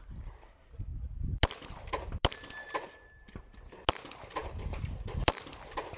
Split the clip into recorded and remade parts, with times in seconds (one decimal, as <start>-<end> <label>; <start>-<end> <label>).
0.0-6.0 recorded